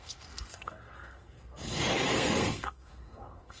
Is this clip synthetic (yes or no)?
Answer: yes